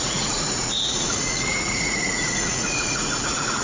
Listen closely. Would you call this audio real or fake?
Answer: fake